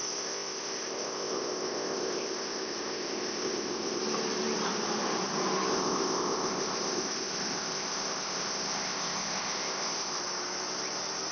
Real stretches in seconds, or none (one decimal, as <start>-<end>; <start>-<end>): 4.0-5.7; 10.2-11.3